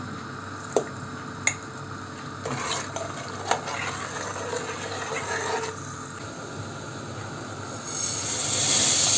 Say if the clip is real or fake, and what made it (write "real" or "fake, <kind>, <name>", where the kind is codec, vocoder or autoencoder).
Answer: real